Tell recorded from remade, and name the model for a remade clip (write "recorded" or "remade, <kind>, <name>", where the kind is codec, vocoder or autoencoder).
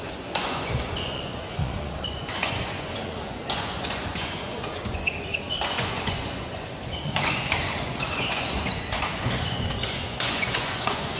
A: remade, vocoder, Vocos